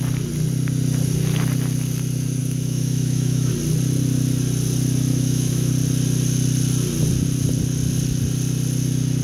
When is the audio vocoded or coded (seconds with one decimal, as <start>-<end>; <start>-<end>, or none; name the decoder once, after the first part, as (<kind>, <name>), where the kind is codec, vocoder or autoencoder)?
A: 2.4-3.5 (autoencoder, DAC-VAE); 5.1-5.7